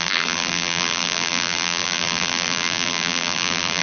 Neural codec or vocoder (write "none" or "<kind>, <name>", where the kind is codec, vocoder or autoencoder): vocoder, BigVGAN v2